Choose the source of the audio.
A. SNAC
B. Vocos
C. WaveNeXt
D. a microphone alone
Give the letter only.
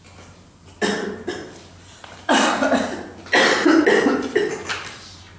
D